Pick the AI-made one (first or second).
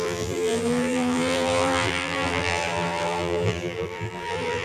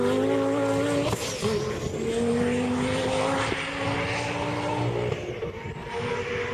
first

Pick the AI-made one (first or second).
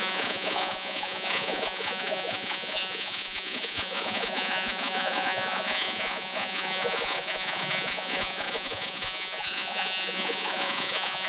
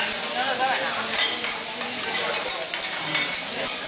first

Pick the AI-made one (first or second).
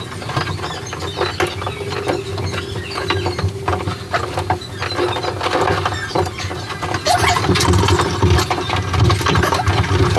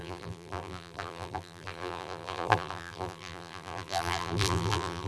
second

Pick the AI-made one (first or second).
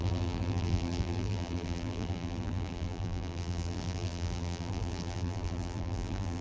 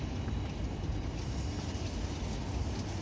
first